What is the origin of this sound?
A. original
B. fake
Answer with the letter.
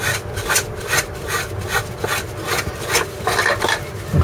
A